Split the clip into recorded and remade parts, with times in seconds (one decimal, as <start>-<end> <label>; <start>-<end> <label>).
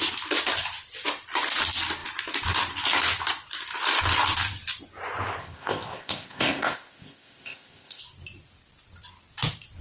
0.0-5.4 recorded; 5.4-8.0 remade; 8.0-9.8 recorded